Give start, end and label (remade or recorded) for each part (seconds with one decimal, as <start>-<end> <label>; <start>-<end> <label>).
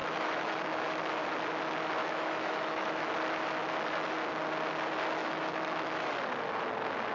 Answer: 0.0-1.0 remade; 1.0-2.0 recorded; 2.0-3.1 remade; 3.1-5.2 recorded; 5.2-6.0 remade; 6.0-7.1 recorded